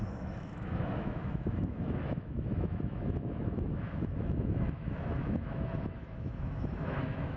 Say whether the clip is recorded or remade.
remade